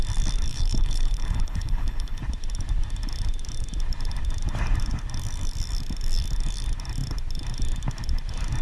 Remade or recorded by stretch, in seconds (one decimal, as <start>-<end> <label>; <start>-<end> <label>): 0.0-0.5 recorded; 0.5-2.2 remade; 2.2-8.6 recorded